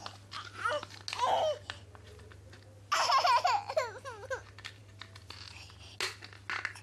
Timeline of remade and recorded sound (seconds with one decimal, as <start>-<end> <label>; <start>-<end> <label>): 0.0-6.8 recorded